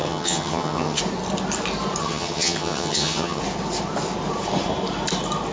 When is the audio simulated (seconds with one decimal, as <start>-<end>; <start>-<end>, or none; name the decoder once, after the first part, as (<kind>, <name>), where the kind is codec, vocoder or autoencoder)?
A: 0.0-1.0 (vocoder, HiFi-GAN); 2.0-3.4